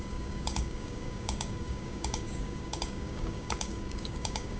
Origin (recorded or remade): remade